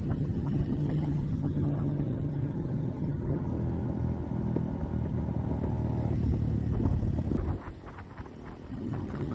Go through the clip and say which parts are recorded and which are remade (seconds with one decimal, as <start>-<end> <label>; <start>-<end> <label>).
0.0-3.5 remade; 3.5-8.7 recorded; 8.7-9.3 remade